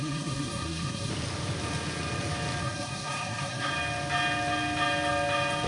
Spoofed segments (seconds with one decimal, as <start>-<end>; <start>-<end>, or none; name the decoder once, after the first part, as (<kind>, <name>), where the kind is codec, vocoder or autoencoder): 0.0-1.1 (codec, SNAC); 2.6-3.7